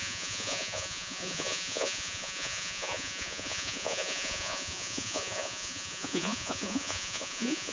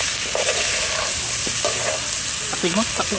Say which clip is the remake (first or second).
first